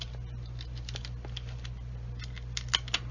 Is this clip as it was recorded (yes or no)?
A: yes